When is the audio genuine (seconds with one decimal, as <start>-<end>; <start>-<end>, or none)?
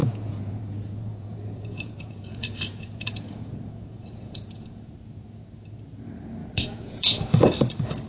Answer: 4.9-6.4; 7.4-8.1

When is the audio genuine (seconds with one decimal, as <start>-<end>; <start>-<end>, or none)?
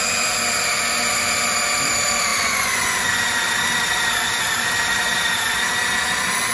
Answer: 0.0-2.3; 3.2-6.5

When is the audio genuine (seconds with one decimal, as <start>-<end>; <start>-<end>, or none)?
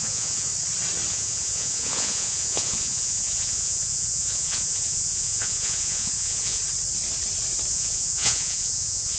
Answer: 0.5-1.1; 6.6-7.7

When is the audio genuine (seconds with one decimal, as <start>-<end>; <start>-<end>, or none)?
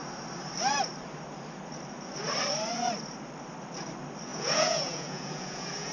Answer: 0.0-4.3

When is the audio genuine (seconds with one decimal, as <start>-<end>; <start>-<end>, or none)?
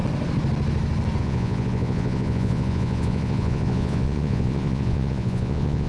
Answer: 0.0-1.2